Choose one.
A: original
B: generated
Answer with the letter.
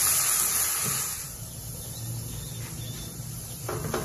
A